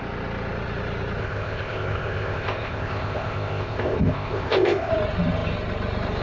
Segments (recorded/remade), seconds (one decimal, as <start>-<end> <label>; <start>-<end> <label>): 0.0-1.2 recorded; 1.2-4.9 remade; 4.9-6.2 recorded